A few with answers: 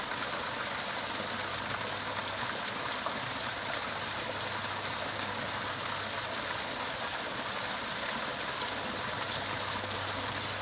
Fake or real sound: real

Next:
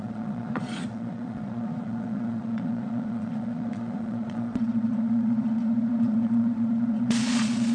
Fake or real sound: fake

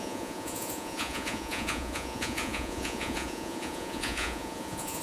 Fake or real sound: fake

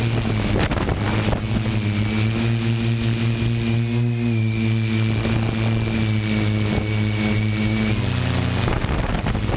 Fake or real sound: real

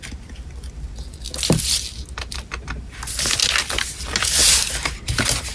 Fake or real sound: real